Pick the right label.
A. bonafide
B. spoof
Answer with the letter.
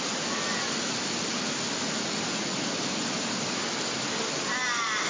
A